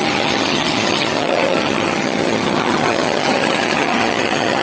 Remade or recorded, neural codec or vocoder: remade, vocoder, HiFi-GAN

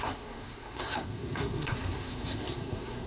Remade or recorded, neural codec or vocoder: remade, codec, SNAC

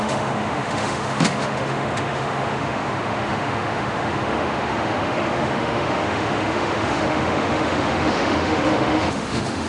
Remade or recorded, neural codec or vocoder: remade, autoencoder, DAC-VAE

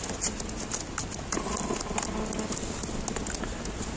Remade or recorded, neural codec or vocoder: recorded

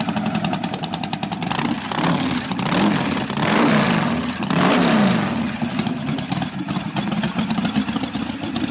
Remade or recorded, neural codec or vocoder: remade, vocoder, BigVGAN v2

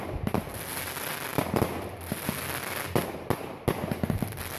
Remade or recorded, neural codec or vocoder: recorded